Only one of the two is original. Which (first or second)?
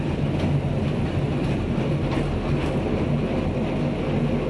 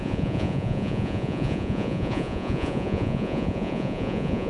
first